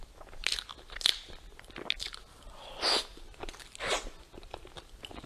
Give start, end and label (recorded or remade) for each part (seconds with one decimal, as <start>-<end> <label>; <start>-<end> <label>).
0.0-3.1 recorded; 3.1-3.6 remade; 3.6-5.3 recorded